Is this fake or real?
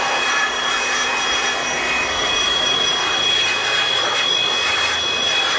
real